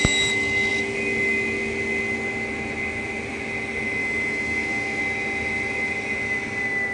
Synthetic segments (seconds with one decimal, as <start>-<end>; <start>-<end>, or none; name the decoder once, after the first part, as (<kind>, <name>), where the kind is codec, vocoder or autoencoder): 4.0-5.0 (autoencoder, DAC-VAE)